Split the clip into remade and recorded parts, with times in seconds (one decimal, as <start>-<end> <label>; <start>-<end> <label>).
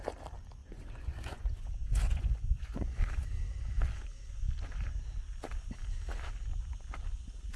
0.0-0.6 recorded; 0.6-3.0 remade; 3.0-7.6 recorded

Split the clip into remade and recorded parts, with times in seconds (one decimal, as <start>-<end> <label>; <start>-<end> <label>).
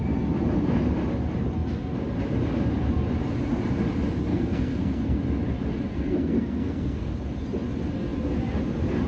0.0-4.3 recorded; 4.3-5.2 remade; 5.2-5.9 recorded; 5.9-7.1 remade; 7.1-9.1 recorded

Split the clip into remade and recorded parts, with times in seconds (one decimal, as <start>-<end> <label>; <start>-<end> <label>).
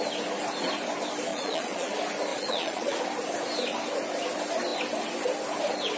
0.0-1.3 recorded; 1.3-1.9 remade; 1.9-2.3 recorded; 2.3-3.0 remade; 3.0-6.0 recorded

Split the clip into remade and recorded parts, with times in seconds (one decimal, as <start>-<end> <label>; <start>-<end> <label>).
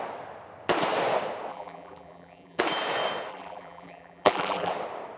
0.0-1.5 recorded; 1.5-2.6 remade; 2.6-3.3 recorded; 3.3-4.7 remade; 4.7-5.2 recorded